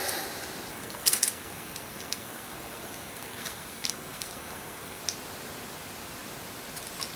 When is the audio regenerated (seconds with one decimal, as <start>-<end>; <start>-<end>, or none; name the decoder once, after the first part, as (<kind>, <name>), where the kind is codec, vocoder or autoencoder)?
0.7-5.0 (codec, SNAC)